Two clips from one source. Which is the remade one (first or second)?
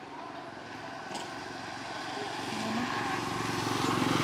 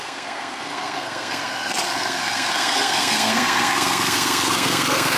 second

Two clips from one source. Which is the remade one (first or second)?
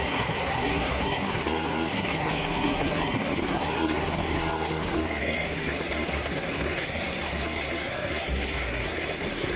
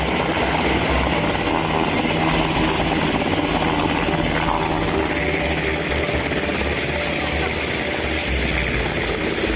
first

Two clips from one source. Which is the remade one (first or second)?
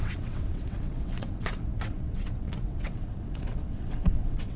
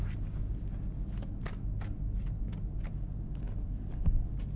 first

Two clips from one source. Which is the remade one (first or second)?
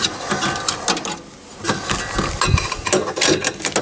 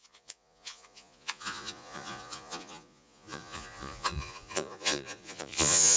second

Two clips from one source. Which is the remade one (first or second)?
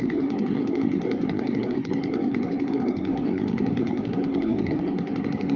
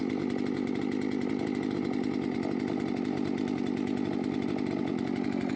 first